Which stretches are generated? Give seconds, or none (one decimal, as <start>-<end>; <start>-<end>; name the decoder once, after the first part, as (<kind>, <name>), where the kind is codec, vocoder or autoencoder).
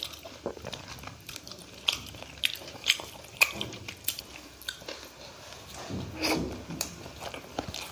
3.3-3.9 (vocoder, BigVGAN v2)